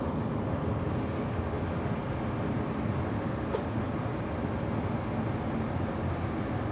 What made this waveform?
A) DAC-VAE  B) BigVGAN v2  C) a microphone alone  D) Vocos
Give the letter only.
C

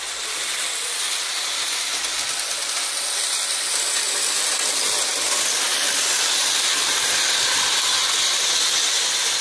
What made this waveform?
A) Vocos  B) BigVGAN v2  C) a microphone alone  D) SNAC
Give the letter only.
C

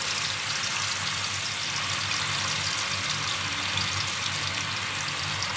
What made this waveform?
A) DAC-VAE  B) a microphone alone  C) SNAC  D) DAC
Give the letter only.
B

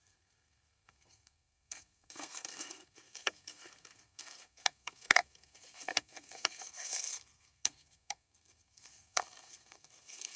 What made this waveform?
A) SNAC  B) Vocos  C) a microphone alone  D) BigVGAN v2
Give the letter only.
A